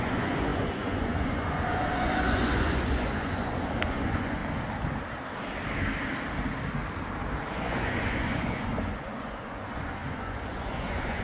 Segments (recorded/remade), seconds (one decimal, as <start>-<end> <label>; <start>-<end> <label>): 0.0-4.4 remade; 4.4-7.5 recorded; 7.5-11.2 remade